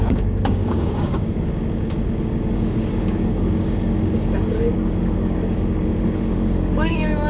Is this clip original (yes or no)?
no